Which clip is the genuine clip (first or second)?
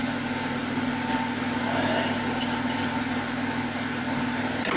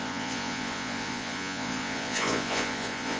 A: first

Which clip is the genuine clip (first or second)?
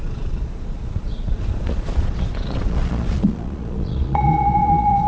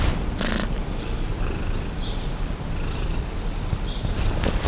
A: second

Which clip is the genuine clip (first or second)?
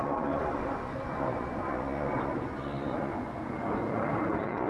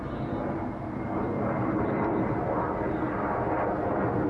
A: second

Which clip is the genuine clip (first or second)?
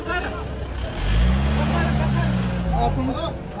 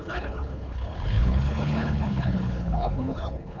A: first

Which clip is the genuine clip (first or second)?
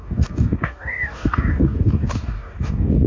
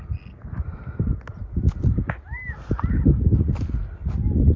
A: second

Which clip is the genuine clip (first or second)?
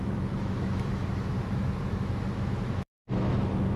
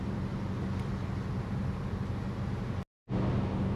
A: second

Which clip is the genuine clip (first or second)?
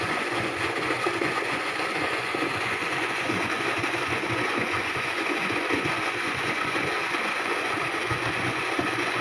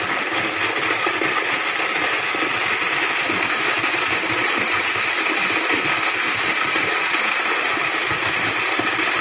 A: second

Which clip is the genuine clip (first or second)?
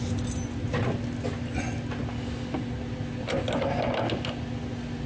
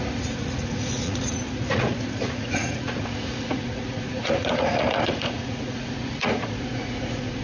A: first